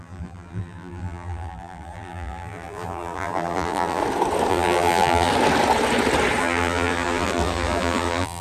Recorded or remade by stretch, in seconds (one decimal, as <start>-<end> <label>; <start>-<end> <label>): 0.0-4.0 remade; 4.0-4.5 recorded; 4.5-5.3 remade; 5.3-6.4 recorded; 6.4-8.4 remade